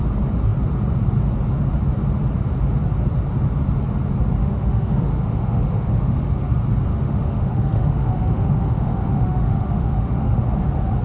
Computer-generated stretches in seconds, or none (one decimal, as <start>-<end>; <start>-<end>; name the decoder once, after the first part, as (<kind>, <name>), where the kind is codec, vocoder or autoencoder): 4.4-6.4 (autoencoder, DAC-VAE); 6.9-10.4